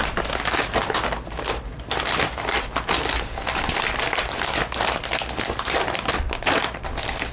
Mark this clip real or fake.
real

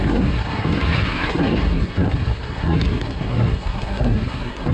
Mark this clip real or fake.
fake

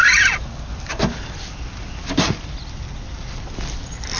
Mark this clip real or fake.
real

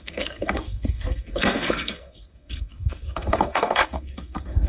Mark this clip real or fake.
fake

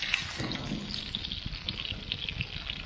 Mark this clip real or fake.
real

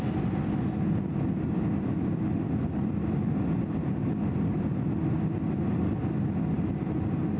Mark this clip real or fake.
real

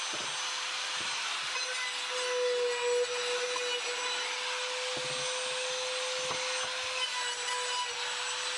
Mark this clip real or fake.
real